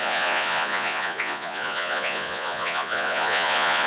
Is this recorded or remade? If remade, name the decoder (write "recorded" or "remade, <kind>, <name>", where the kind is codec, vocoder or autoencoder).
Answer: remade, vocoder, Vocos